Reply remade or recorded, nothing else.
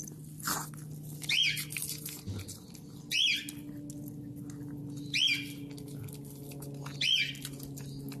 recorded